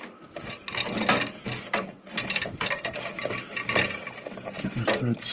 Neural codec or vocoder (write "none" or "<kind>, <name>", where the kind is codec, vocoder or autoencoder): none